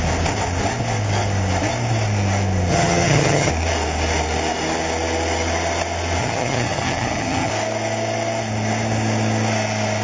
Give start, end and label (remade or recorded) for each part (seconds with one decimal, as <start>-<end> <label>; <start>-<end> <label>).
0.0-2.7 recorded; 2.7-3.5 remade; 3.5-6.2 recorded; 6.2-7.5 remade; 7.5-10.0 recorded